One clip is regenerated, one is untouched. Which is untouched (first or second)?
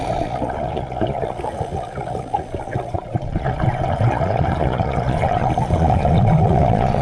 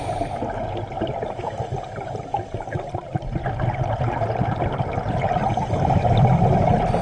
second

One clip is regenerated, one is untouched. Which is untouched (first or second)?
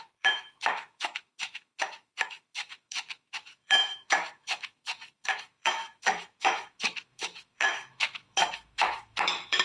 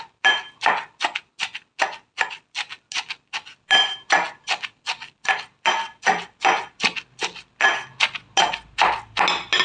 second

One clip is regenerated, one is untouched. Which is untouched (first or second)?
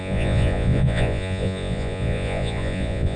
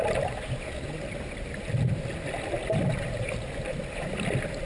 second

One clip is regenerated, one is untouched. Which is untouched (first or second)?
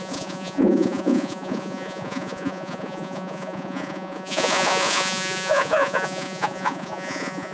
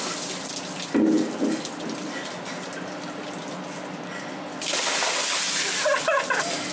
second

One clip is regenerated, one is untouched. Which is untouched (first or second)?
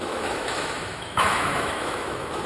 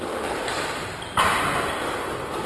second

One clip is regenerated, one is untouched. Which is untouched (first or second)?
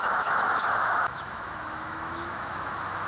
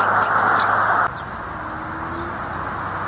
second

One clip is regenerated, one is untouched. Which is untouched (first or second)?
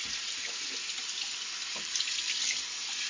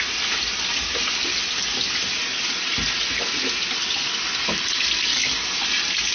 second